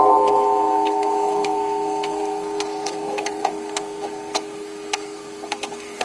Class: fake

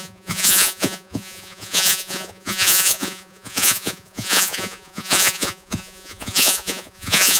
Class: fake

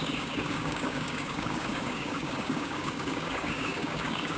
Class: fake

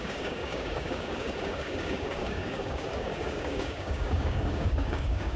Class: fake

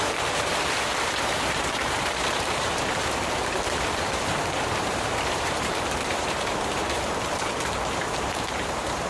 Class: fake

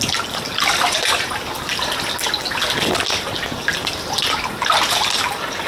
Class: real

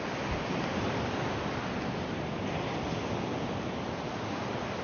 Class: real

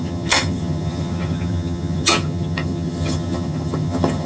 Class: fake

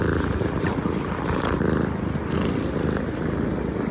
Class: real